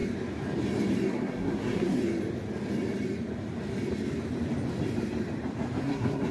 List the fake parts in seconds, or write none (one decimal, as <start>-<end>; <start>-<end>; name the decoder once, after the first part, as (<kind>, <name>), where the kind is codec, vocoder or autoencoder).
1.1-2.0 (codec, SNAC); 5.8-6.3